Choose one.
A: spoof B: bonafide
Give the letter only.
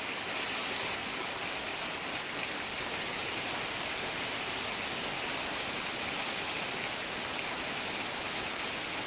B